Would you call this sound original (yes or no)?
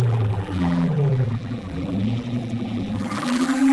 no